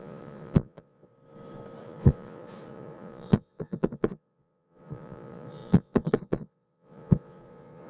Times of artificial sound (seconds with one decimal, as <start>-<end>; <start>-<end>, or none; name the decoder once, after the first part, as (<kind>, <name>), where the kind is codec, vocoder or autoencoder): 0.0-1.1 (vocoder, Vocos); 1.8-7.9